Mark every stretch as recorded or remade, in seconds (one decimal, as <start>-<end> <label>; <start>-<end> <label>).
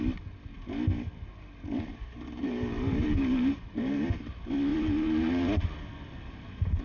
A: 0.0-1.9 recorded; 1.9-4.2 remade; 4.2-4.7 recorded; 4.7-5.6 remade; 5.6-6.8 recorded